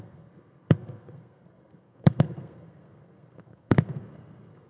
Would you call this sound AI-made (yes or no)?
yes